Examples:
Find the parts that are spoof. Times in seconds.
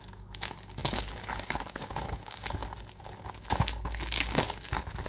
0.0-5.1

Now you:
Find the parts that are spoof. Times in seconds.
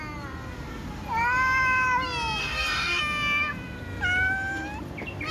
2.4-3.0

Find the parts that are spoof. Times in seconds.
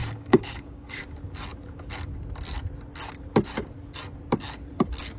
0.0-1.0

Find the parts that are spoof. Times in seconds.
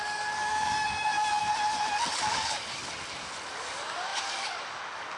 0.0-1.4; 2.1-2.8; 3.5-5.2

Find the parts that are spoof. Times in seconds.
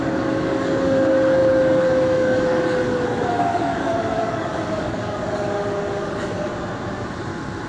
0.0-6.5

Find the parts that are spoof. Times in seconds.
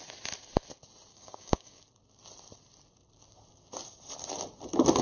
1.1-1.8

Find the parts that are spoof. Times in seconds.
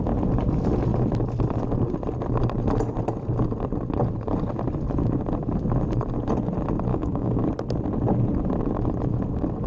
6.9-7.4